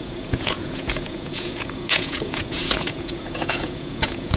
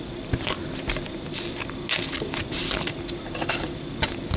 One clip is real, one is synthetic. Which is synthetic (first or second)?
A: first